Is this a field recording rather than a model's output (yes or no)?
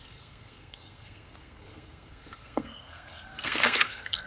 no